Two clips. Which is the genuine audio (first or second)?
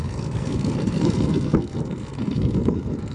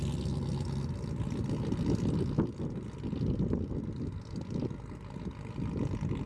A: second